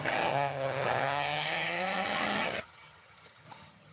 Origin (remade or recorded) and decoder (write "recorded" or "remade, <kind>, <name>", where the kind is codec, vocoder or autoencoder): remade, vocoder, HiFi-GAN